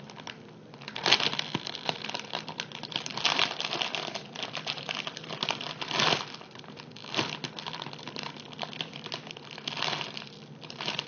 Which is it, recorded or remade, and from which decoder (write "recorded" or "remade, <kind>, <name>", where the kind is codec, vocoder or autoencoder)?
recorded